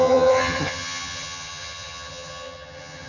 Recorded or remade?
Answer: remade